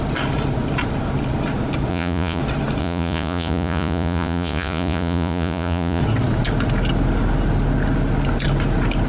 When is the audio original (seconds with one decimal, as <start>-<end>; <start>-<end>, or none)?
0.0-1.9; 2.4-2.8; 6.0-9.1